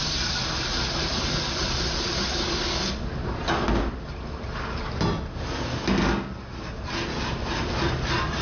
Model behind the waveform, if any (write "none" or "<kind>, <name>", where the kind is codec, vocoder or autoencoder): none